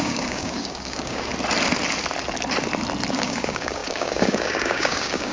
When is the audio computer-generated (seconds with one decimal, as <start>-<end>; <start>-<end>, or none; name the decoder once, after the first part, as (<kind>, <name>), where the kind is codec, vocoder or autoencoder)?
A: 0.0-1.3 (codec, DAC); 3.1-5.3